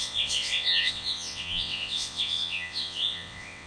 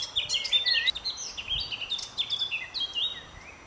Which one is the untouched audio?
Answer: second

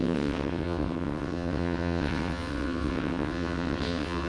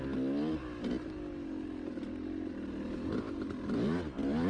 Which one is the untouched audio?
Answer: second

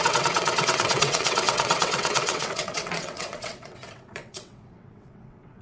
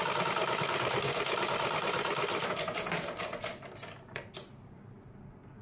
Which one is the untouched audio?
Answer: second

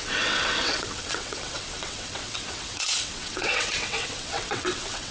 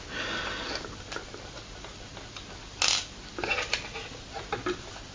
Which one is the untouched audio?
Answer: second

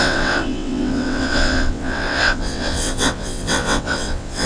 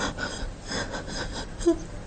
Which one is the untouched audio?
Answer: second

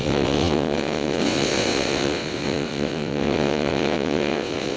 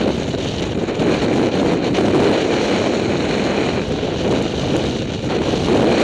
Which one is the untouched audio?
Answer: second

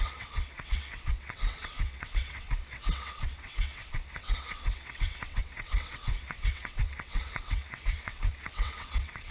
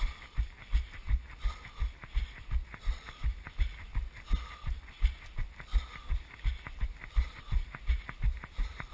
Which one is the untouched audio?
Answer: second